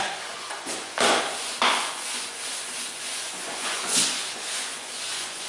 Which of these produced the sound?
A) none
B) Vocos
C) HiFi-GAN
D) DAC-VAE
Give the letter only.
B